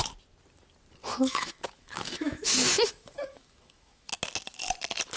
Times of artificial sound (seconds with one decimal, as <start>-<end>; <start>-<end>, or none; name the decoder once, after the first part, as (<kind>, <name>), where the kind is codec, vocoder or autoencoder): 1.0-4.1 (autoencoder, DAC-VAE)